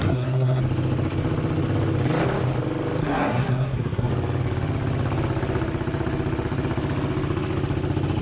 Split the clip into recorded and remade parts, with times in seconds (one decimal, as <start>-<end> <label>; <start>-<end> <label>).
0.0-0.6 remade; 0.6-3.0 recorded; 3.0-4.1 remade; 4.1-8.2 recorded